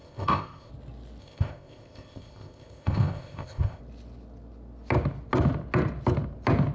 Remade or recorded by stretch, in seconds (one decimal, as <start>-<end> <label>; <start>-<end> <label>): 0.0-0.7 remade; 0.7-1.2 recorded; 1.2-3.8 remade; 3.8-6.7 recorded